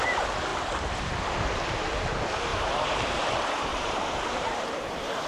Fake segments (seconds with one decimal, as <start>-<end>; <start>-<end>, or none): 0.5-1.1; 3.7-4.6